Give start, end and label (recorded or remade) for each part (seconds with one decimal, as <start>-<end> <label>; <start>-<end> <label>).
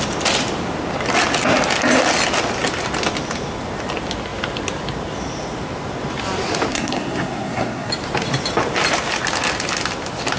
0.0-6.7 recorded; 6.7-7.9 remade; 7.9-10.4 recorded